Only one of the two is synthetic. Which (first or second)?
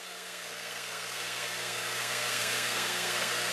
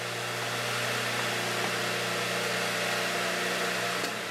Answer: first